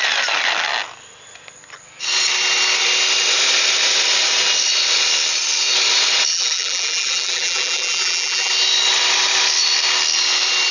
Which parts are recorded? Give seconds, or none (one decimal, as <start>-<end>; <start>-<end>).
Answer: 0.0-6.3; 8.5-10.7